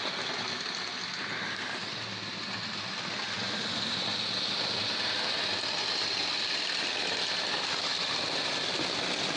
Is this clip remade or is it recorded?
recorded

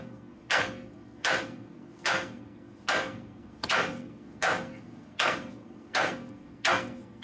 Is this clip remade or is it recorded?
remade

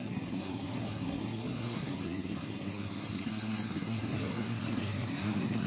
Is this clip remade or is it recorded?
remade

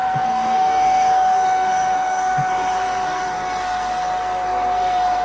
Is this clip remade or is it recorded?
remade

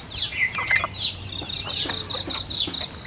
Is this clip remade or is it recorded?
recorded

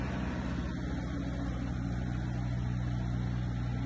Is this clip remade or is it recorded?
recorded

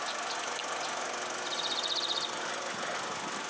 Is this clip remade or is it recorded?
recorded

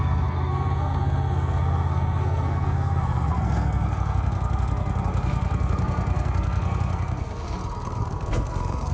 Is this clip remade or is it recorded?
remade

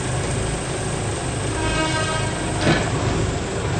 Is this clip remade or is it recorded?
recorded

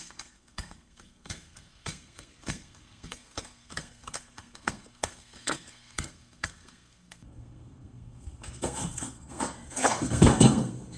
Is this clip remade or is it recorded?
remade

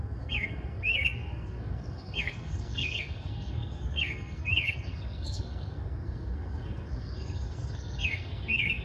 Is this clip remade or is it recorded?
remade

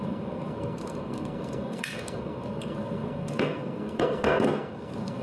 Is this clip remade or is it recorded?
remade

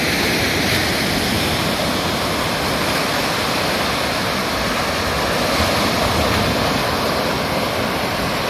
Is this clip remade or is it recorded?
recorded